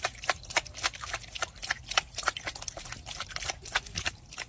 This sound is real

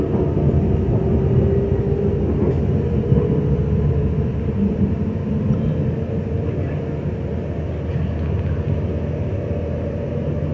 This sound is real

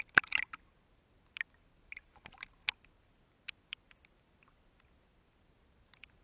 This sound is real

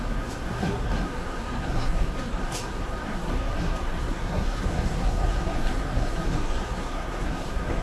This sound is fake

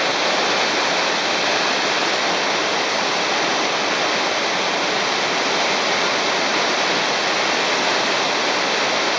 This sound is real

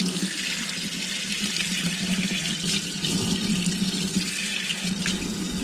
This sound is real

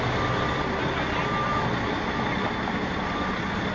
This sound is real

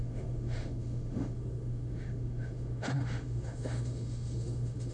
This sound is fake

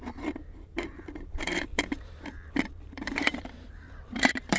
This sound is fake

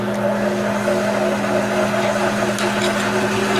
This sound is real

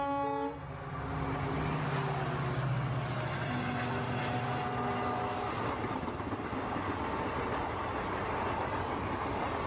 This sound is real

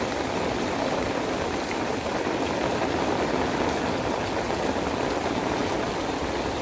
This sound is real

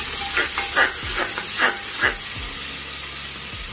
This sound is real